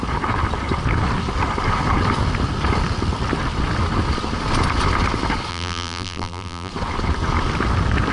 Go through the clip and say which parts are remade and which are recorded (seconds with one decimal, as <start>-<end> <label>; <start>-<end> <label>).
0.0-5.5 recorded; 5.5-6.7 remade; 6.7-8.1 recorded

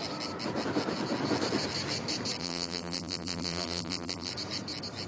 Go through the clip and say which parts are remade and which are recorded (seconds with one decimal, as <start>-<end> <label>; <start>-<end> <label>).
0.0-2.4 recorded; 2.4-4.3 remade; 4.3-5.1 recorded